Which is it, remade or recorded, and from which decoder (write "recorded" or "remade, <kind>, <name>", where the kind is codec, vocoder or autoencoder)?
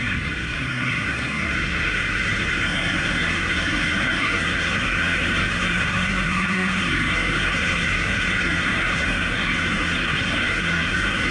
remade, codec, SNAC